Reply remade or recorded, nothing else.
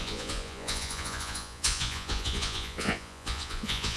remade